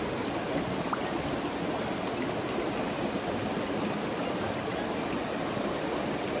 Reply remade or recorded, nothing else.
recorded